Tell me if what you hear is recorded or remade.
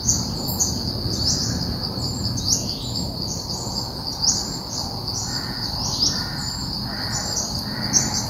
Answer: remade